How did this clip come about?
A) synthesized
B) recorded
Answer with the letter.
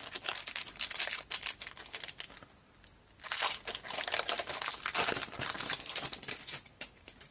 B